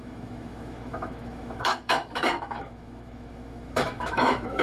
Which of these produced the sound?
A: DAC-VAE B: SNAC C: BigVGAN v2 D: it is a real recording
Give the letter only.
A